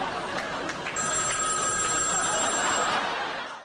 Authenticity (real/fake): real